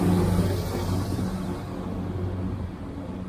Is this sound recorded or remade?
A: recorded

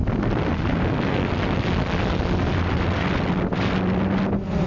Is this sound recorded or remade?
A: recorded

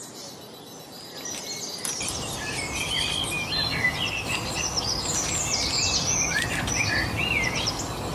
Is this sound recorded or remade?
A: recorded